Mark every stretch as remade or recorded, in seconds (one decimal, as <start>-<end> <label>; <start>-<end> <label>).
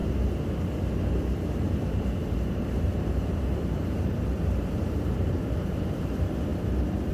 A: 0.0-1.2 recorded; 1.2-6.5 remade; 6.5-7.1 recorded